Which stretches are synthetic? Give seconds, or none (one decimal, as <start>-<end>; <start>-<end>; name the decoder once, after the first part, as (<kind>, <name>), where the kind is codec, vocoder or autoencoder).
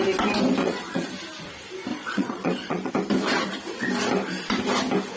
0.6-1.1 (vocoder, Vocos); 1.9-2.9